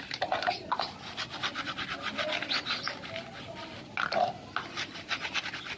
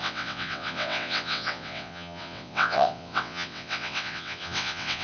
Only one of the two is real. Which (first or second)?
first